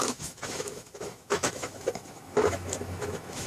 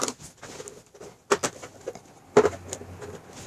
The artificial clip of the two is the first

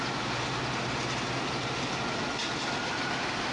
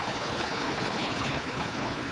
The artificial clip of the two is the second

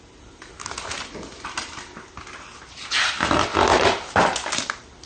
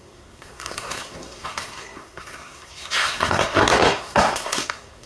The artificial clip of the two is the second